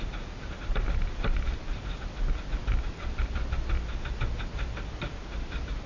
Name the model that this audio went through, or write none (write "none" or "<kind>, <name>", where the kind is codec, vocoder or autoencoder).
none